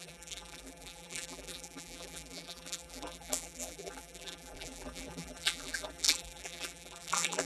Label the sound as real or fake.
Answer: fake